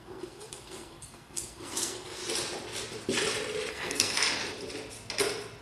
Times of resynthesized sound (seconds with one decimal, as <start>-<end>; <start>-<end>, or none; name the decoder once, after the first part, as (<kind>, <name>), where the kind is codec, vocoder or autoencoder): 0.0-2.2 (codec, SNAC); 3.7-4.4